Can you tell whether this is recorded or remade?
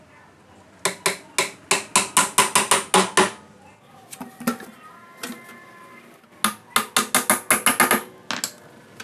recorded